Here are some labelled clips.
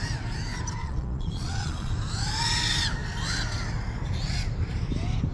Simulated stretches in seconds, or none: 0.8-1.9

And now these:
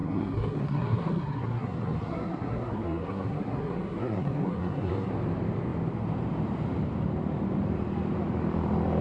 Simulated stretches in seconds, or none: 0.0-5.1

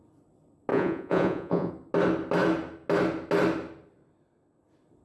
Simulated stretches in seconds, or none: 0.7-1.7

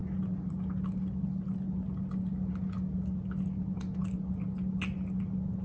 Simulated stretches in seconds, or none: none

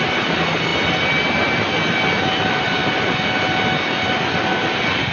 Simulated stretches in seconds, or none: none

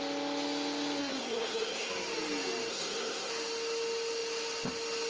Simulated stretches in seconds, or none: 1.0-1.9; 2.7-3.3

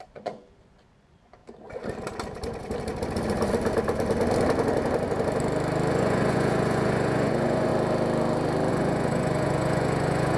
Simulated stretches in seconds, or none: 0.0-1.4; 5.9-7.7; 8.7-10.4